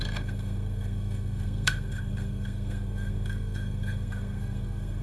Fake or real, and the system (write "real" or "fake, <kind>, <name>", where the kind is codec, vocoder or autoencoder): fake, codec, SNAC